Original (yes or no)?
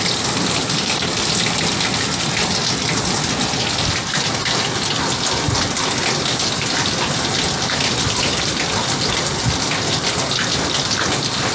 yes